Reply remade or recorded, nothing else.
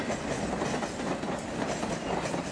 recorded